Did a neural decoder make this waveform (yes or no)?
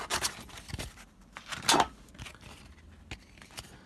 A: no